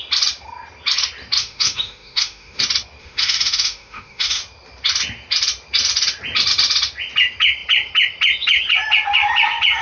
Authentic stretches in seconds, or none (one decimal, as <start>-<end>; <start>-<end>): 0.0-1.4; 2.6-3.0; 4.4-9.8